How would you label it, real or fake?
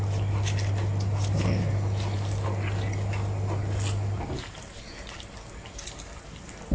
real